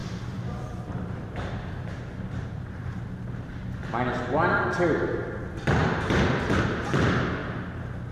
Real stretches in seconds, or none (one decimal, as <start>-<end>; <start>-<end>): 3.0-5.8; 6.4-8.1